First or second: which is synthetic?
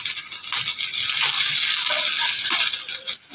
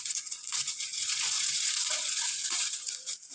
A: second